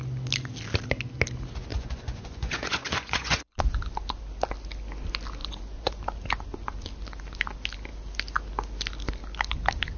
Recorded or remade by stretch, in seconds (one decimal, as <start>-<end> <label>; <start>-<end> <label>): 0.0-1.7 recorded; 1.7-3.8 remade; 3.8-5.4 recorded; 5.4-6.0 remade; 6.0-10.0 recorded